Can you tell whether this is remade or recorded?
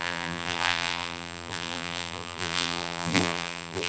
remade